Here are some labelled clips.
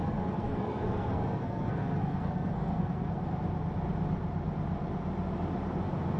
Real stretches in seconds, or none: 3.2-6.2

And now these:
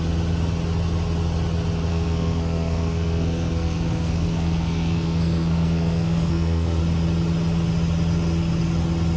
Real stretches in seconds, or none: 0.0-1.9; 6.8-9.2

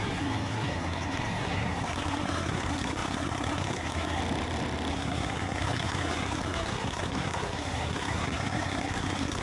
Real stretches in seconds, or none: 4.2-4.9